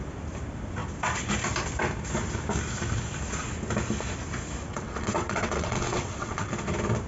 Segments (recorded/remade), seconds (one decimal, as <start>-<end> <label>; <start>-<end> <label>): 0.0-4.7 recorded; 4.7-6.5 remade; 6.5-7.1 recorded